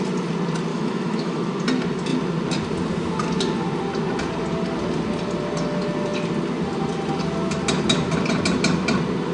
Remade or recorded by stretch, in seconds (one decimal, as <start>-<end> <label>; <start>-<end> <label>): 0.0-0.7 recorded; 0.7-1.5 remade; 1.5-9.3 recorded